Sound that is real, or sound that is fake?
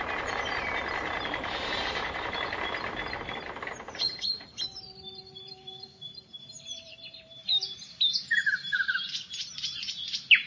fake